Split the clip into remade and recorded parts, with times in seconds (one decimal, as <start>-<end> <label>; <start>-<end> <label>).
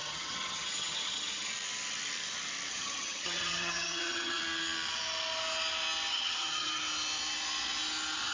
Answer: 0.0-1.5 remade; 1.5-2.7 recorded; 2.7-4.4 remade; 4.4-6.1 recorded; 6.1-6.8 remade; 6.8-8.3 recorded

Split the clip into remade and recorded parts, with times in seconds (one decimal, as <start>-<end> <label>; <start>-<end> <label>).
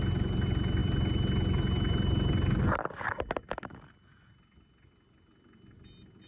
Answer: 0.0-6.3 recorded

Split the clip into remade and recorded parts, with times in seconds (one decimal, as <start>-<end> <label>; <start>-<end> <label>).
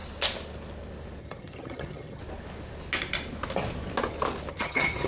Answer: 0.0-1.2 recorded; 1.2-2.2 remade; 2.2-4.5 recorded; 4.5-5.1 remade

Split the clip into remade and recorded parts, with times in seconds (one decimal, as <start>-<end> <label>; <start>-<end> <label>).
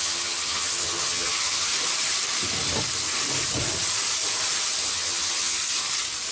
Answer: 0.0-1.7 remade; 1.7-4.8 recorded; 4.8-5.6 remade; 5.6-6.3 recorded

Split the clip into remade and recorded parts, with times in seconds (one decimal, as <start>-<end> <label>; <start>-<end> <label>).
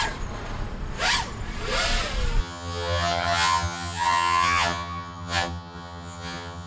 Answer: 0.0-2.4 recorded; 2.4-6.7 remade